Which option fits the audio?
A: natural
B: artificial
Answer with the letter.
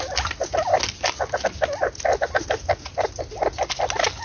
A